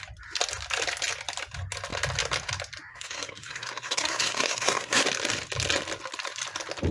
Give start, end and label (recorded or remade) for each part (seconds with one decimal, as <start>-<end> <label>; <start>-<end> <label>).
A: 0.0-2.9 recorded; 2.9-5.0 remade; 5.0-6.9 recorded